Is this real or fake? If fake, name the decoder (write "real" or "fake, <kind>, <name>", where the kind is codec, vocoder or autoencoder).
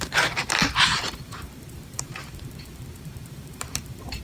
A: fake, vocoder, BigVGAN v2